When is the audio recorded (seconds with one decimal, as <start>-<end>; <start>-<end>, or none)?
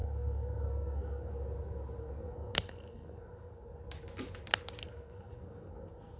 1.3-2.0; 3.8-4.8